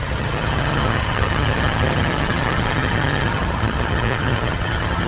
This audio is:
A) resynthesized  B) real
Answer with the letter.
A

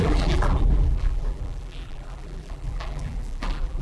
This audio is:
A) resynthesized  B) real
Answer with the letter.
A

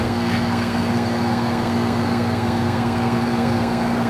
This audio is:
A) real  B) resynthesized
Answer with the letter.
B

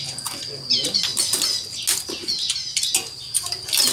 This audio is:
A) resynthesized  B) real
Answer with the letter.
B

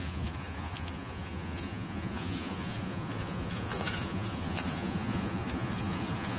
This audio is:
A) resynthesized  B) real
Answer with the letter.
A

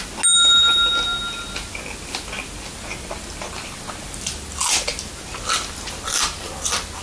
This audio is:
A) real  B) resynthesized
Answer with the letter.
A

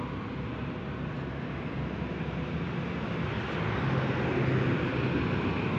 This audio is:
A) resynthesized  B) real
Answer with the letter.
B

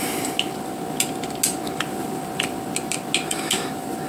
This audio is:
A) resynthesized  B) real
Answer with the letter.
B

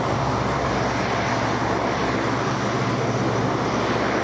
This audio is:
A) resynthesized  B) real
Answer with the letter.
B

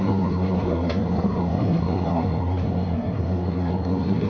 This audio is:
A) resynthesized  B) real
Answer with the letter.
A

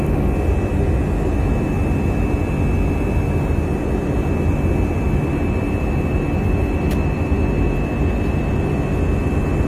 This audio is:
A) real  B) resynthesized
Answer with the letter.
A